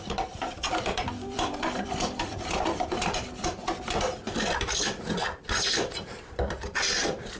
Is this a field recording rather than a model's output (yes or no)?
no